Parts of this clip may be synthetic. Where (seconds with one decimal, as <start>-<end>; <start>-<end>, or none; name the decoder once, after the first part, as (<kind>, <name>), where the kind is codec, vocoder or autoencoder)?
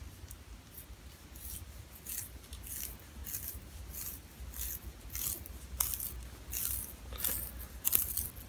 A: none